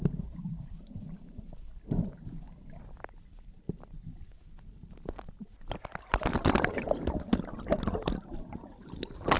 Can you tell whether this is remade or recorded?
recorded